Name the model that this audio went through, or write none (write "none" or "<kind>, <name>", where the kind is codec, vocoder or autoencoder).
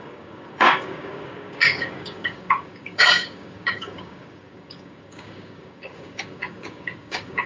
codec, DAC